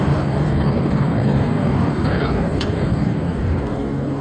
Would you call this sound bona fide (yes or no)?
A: no